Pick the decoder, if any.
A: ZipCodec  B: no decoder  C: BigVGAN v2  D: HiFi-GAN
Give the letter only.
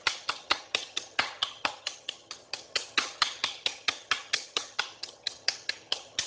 D